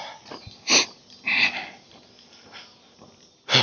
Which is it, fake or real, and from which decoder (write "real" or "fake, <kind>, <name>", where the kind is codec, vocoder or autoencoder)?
real